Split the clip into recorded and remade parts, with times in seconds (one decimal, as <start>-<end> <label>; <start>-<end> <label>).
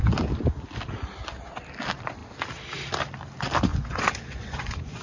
0.0-3.7 recorded; 3.7-5.0 remade